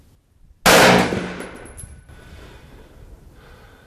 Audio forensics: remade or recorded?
recorded